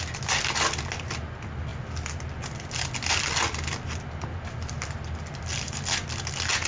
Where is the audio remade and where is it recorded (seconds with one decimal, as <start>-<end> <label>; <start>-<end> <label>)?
0.0-6.7 recorded